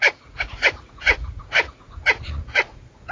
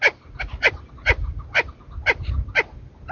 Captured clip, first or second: second